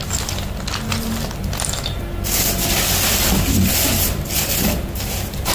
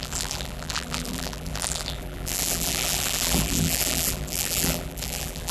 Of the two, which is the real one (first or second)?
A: first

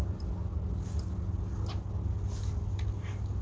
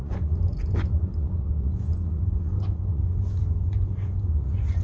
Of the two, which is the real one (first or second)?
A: first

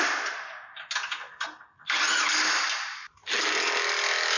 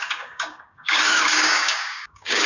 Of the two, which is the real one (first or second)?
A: first